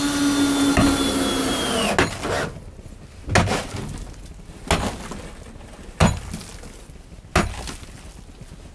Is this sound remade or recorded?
recorded